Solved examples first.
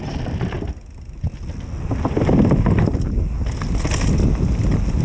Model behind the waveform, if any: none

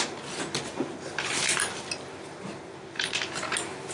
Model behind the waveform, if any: none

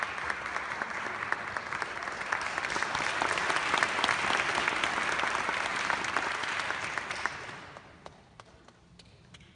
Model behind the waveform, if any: none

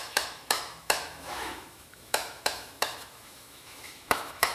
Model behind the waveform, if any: autoencoder, DAC-VAE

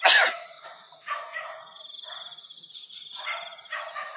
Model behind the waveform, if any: none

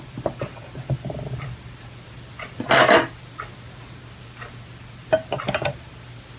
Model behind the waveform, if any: none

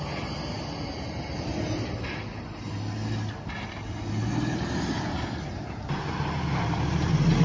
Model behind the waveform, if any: none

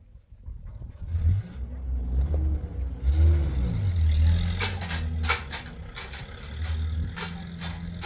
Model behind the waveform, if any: none